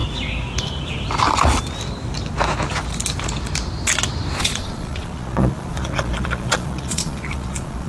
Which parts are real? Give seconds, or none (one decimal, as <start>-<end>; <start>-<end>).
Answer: 0.0-4.4